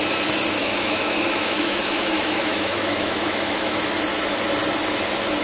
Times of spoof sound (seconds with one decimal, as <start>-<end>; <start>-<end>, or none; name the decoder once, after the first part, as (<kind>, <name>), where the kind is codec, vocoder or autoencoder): 0.6-3.8 (autoencoder, DAC-VAE)